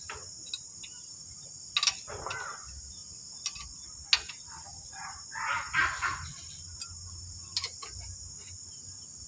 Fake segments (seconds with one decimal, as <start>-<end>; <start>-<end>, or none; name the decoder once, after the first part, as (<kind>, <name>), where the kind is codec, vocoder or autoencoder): none